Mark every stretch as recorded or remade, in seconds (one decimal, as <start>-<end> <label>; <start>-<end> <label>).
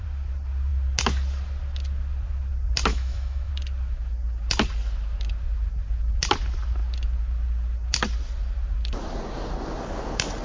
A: 0.0-2.9 recorded; 2.9-3.5 remade; 3.5-10.4 recorded